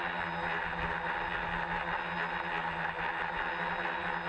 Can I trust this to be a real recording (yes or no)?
yes